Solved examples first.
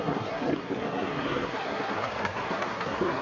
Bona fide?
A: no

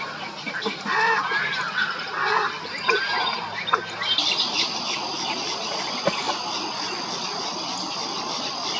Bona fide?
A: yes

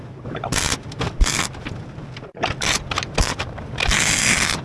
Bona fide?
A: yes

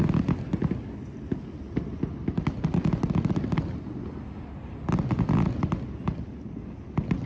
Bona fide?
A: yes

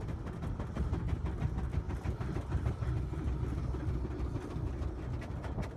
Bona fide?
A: yes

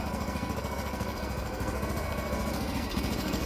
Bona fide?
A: no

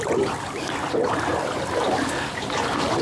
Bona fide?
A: yes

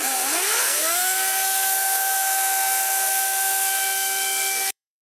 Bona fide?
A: no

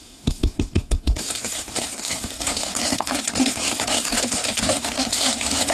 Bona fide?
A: no